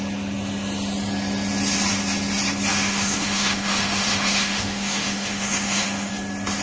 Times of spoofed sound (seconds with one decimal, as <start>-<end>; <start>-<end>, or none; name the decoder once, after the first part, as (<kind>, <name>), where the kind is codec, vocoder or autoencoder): 2.7-6.1 (autoencoder, DAC-VAE)